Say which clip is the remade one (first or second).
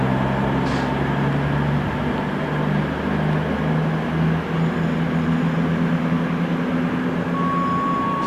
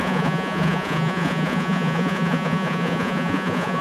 second